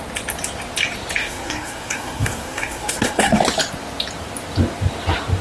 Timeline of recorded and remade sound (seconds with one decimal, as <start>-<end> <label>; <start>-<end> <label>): 0.0-1.2 recorded; 1.2-3.4 remade; 3.4-5.4 recorded

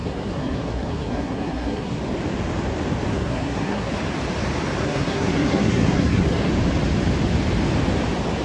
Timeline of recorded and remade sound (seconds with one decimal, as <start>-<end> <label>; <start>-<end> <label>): 0.0-2.0 remade; 2.0-3.1 recorded; 3.1-3.9 remade; 3.9-4.8 recorded; 4.8-6.5 remade; 6.5-8.4 recorded

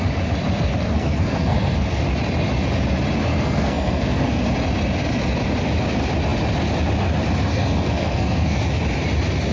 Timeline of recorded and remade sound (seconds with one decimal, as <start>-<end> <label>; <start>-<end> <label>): 0.0-0.8 recorded; 0.8-2.0 remade; 2.0-3.3 recorded; 3.3-4.4 remade; 4.4-7.5 recorded; 7.5-8.6 remade; 8.6-9.5 recorded

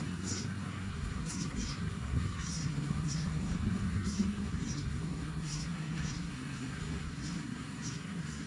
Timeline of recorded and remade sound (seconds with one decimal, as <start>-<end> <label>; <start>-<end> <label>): 0.0-8.5 remade

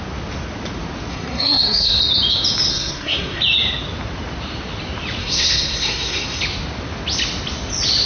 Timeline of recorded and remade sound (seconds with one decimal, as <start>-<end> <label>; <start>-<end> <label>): 0.0-1.1 recorded; 1.1-2.0 remade; 2.0-2.7 recorded; 2.7-3.4 remade; 3.4-5.2 recorded; 5.2-6.4 remade; 6.4-8.1 recorded